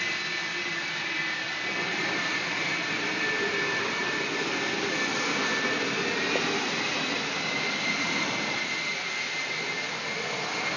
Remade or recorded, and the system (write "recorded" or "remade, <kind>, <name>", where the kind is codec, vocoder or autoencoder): recorded